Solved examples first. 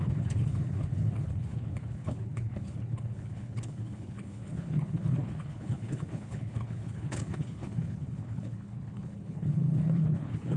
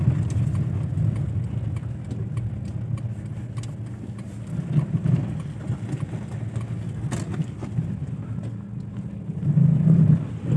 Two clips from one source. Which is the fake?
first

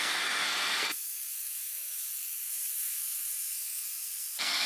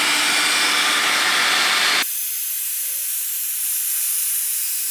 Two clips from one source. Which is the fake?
first